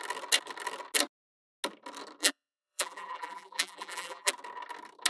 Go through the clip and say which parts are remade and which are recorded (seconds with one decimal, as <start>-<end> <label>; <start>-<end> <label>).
0.0-2.2 recorded; 2.2-4.3 remade; 4.3-5.1 recorded